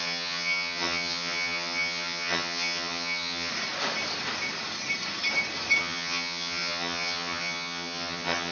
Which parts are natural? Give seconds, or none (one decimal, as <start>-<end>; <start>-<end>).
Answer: 3.5-5.8